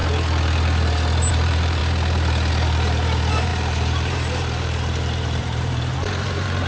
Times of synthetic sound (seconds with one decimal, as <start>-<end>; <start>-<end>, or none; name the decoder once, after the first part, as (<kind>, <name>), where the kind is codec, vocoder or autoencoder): 1.3-1.8 (vocoder, BigVGAN v2); 2.5-6.7